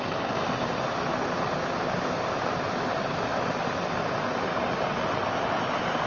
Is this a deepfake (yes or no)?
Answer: no